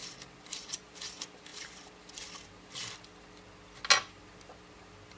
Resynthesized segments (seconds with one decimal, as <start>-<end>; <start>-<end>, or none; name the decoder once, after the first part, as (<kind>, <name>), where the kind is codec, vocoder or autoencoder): none